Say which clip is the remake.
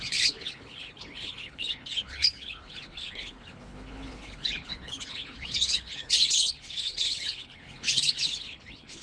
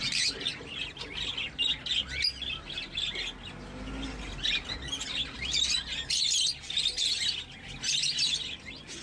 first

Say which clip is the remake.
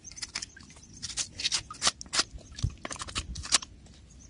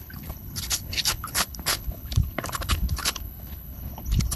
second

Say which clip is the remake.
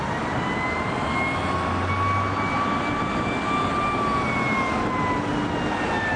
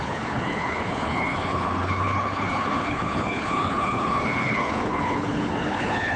second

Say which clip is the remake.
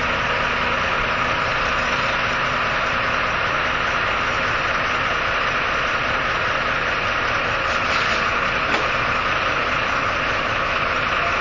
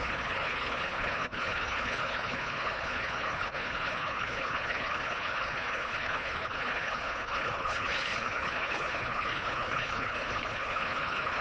second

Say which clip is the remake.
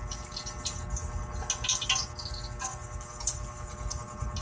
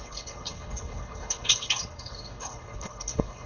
second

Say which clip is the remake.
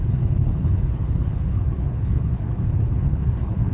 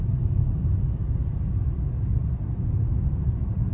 first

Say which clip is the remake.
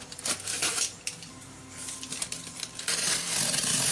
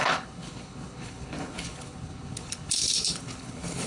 second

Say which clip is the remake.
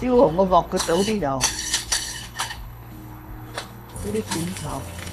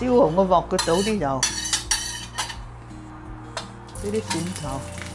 first